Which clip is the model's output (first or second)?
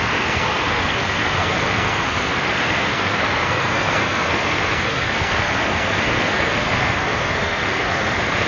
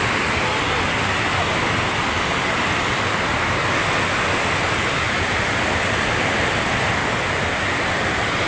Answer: first